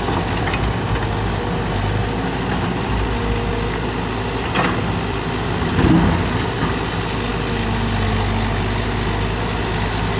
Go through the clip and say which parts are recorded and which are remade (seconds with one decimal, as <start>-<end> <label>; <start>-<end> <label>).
0.0-10.2 recorded